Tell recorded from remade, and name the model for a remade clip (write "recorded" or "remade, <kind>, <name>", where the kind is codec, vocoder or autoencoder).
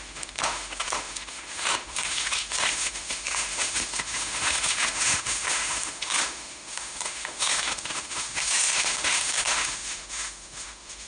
remade, autoencoder, DAC-VAE